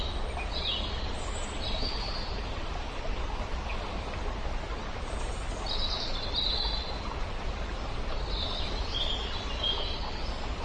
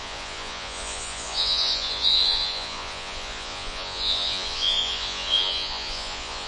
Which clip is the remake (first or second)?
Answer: second